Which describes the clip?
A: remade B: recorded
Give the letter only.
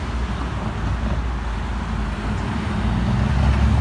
B